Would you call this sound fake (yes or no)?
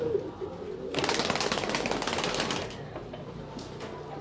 no